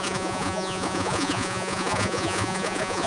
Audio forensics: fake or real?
fake